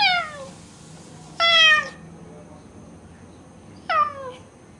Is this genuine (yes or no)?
yes